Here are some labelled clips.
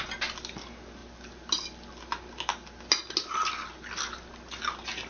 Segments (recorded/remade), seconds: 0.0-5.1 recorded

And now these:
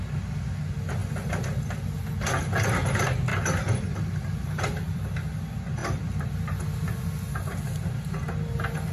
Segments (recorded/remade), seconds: 0.0-1.0 recorded; 1.0-2.0 remade; 2.0-3.3 recorded; 3.3-4.0 remade; 4.0-5.8 recorded; 5.8-6.3 remade; 6.3-8.9 recorded

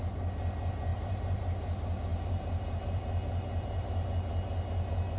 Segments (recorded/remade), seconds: 0.0-0.9 recorded; 0.9-1.4 remade; 1.4-2.1 recorded; 2.1-4.1 remade; 4.1-5.2 recorded

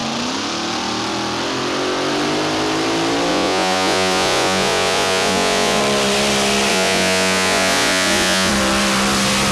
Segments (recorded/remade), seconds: 0.0-3.3 recorded; 3.3-5.8 remade; 5.8-6.7 recorded; 6.7-8.5 remade; 8.5-9.5 recorded